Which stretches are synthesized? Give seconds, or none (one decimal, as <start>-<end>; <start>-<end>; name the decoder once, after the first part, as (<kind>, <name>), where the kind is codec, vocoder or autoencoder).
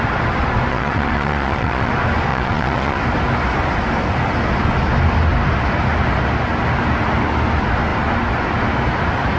0.7-1.9 (vocoder, Vocos); 2.3-3.0